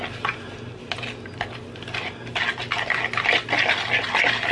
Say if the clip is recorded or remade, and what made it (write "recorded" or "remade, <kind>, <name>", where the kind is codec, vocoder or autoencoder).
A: recorded